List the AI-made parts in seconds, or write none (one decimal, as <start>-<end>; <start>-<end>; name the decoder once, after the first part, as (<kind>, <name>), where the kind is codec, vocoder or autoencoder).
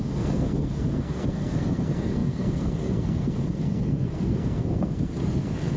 0.0-5.8 (codec, SNAC)